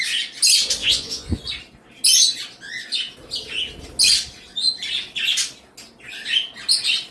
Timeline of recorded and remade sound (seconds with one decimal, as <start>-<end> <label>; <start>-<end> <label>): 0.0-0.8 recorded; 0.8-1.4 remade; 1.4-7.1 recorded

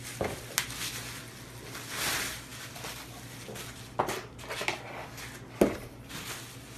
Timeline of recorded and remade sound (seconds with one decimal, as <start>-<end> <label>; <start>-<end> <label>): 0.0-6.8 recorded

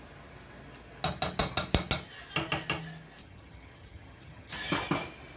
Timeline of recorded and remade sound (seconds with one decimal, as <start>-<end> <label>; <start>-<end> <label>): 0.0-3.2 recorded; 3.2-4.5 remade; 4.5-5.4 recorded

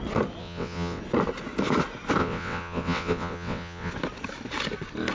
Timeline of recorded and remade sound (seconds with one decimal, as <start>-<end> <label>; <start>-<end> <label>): 0.0-0.4 recorded; 0.4-1.0 remade; 1.0-2.2 recorded; 2.2-3.9 remade; 3.9-5.1 recorded